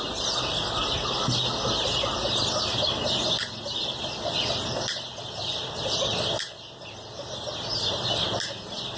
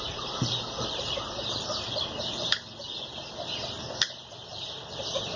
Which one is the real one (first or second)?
first